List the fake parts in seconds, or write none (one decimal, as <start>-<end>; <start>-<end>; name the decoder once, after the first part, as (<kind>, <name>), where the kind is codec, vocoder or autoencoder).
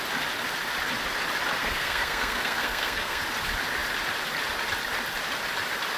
1.6-3.2 (codec, SNAC)